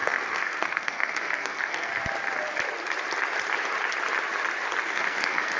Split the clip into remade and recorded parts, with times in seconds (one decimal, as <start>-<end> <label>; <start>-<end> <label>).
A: 0.0-1.9 remade; 1.9-4.8 recorded; 4.8-5.6 remade